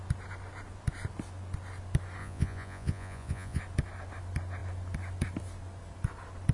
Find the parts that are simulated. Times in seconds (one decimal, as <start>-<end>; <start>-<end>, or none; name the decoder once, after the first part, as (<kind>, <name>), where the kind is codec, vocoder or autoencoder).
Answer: 2.2-3.6 (vocoder, Vocos)